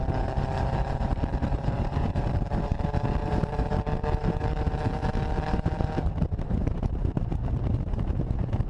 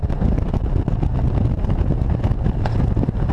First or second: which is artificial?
first